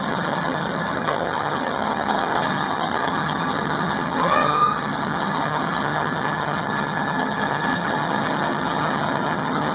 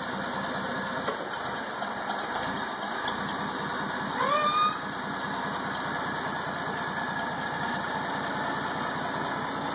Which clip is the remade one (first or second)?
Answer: first